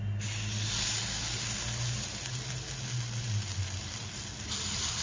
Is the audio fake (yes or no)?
no